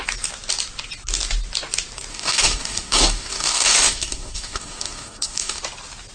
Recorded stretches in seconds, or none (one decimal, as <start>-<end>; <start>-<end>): 0.0-2.1; 5.6-6.1

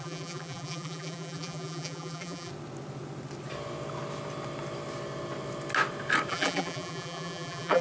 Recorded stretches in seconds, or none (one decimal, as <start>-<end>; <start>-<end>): 2.5-6.3

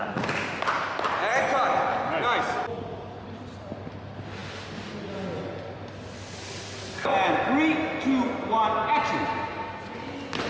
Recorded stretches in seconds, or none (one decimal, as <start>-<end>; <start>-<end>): 0.0-10.5

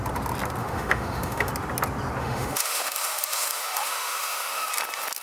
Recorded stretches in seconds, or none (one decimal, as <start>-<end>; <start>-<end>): 0.0-0.6; 1.5-2.2; 4.7-5.2

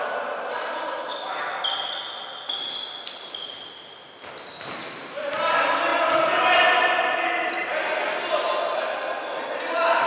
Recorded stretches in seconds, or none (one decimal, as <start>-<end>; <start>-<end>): 0.0-10.1

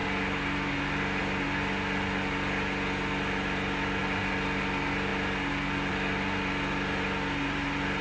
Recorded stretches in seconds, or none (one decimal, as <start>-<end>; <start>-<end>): 0.0-8.0